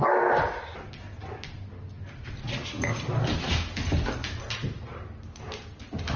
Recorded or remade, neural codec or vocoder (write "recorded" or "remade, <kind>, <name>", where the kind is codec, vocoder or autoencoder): recorded